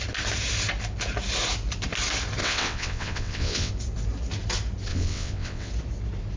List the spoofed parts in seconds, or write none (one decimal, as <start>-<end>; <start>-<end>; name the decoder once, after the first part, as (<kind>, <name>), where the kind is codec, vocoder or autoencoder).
2.4-3.7 (vocoder, WaveNeXt); 4.9-5.7